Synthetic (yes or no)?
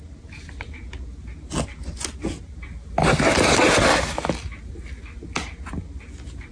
no